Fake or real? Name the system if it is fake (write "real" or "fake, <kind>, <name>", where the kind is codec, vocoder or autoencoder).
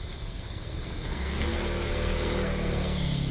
fake, codec, SNAC